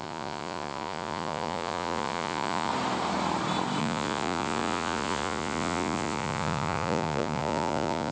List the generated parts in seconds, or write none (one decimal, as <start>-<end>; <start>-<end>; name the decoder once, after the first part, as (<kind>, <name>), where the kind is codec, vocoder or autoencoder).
0.0-2.7 (vocoder, Vocos); 3.8-8.1